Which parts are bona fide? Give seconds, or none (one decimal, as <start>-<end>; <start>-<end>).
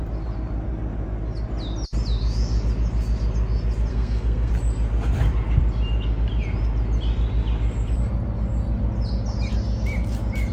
0.0-3.9; 4.5-10.5